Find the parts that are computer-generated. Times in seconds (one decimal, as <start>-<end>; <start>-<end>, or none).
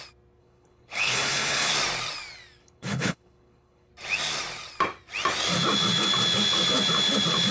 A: 0.4-1.7; 2.6-3.9